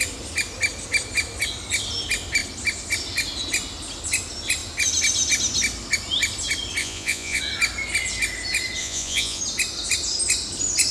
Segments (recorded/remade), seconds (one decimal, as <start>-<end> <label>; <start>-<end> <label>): 0.0-6.8 recorded; 6.8-7.4 remade; 7.4-8.8 recorded; 8.8-9.4 remade; 9.4-10.9 recorded